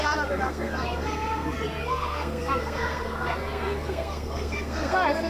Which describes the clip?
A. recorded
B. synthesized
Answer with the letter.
B